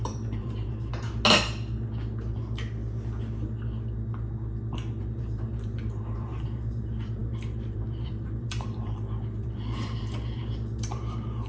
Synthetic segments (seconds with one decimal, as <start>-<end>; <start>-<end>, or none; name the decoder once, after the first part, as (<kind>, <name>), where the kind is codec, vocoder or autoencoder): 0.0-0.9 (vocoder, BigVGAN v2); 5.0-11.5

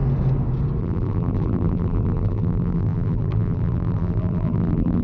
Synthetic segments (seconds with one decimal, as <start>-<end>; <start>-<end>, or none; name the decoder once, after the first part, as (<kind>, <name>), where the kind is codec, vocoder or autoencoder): 0.8-5.0 (vocoder, BigVGAN v2)

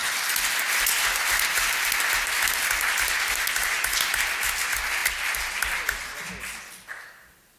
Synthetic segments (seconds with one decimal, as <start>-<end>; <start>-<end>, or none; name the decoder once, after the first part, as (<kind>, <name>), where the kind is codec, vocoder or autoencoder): none